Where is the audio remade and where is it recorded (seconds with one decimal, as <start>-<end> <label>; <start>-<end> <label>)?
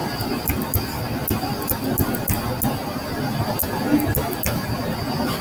0.0-5.4 recorded